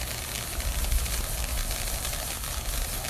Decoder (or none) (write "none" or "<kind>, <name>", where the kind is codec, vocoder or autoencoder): none